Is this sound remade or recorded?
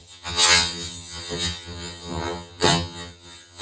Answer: remade